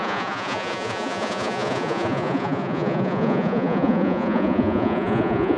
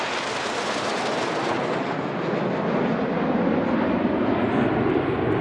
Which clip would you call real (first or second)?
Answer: second